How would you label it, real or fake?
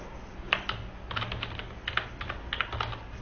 real